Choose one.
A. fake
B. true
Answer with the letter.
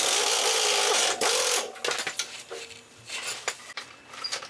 B